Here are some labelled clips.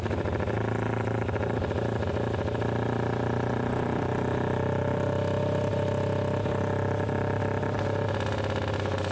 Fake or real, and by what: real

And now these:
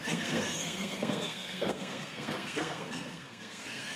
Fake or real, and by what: fake, codec, SNAC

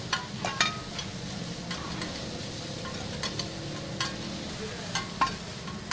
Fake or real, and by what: real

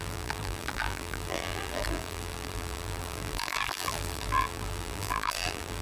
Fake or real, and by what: fake, vocoder, BigVGAN v2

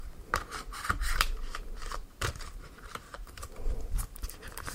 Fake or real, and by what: fake, vocoder, BigVGAN v2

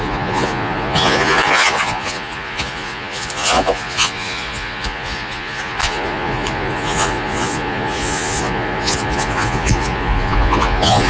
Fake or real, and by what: fake, vocoder, Vocos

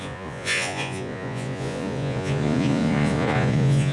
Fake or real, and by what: fake, vocoder, Vocos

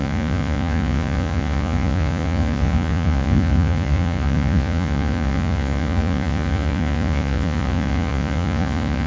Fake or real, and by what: fake, vocoder, Vocos